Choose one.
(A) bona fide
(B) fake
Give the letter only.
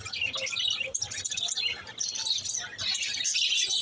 A